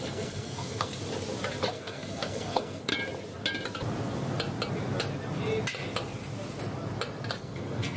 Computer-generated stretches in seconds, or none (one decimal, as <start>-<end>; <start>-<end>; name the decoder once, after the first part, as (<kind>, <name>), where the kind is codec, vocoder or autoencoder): 0.0-1.0 (codec, SNAC); 1.7-2.9; 7.4-8.0